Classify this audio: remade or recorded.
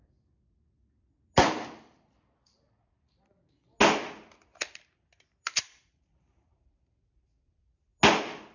recorded